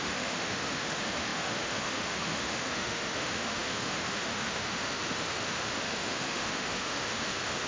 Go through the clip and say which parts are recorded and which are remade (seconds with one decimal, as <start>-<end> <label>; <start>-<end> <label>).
0.0-7.7 remade